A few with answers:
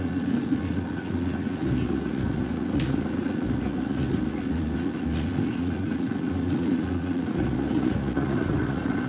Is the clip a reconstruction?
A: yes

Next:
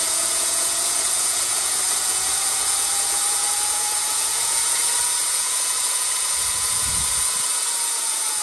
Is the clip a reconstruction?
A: yes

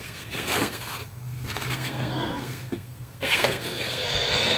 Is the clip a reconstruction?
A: yes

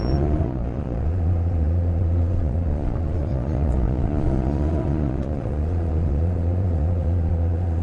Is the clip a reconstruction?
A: yes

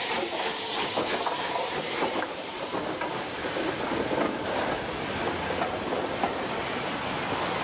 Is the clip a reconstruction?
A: no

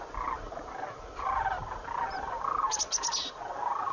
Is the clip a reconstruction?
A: no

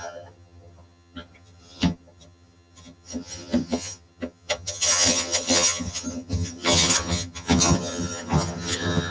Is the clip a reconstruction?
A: yes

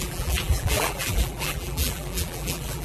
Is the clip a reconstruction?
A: yes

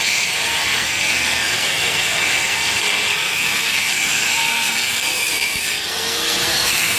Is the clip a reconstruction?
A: yes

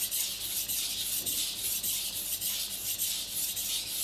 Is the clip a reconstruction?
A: no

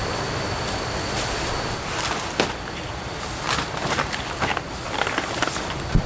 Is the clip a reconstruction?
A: no